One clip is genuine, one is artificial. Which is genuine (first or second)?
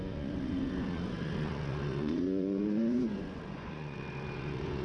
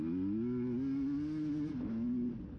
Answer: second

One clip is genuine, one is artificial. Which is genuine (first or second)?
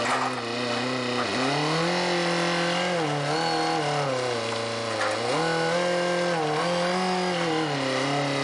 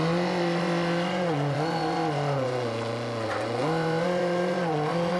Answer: first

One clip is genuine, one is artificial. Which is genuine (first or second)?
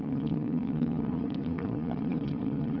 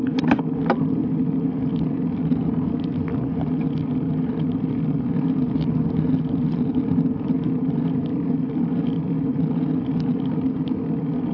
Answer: second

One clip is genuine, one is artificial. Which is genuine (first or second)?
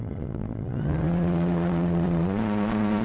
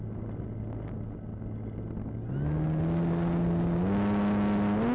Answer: second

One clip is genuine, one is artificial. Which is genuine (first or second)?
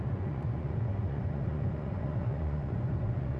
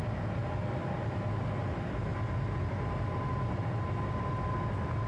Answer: second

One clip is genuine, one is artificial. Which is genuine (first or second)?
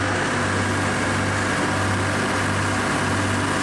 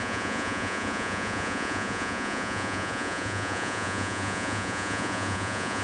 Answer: first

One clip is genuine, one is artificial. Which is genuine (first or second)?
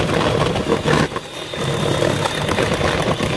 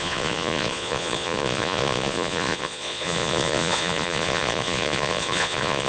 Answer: first